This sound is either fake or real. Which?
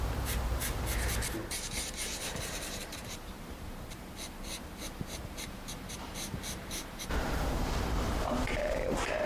fake